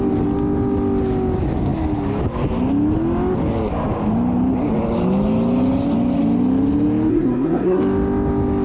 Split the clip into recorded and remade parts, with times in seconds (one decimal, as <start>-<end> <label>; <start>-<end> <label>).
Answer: 0.0-7.1 recorded; 7.1-7.8 remade; 7.8-8.6 recorded